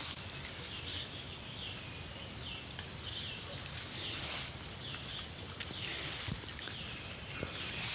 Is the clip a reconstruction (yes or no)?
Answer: no